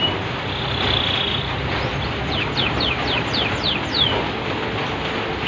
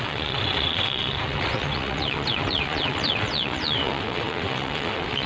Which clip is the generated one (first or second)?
second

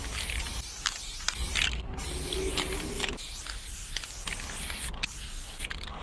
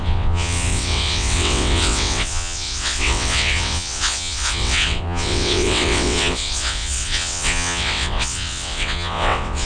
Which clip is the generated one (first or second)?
second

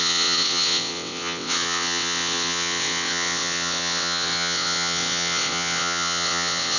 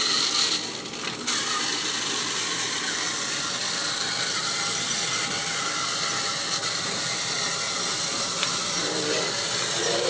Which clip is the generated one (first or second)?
first